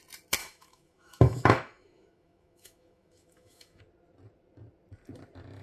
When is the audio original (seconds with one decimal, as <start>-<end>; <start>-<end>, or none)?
0.0-0.4; 3.8-5.6